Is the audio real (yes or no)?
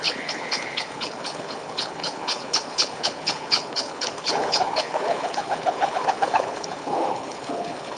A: no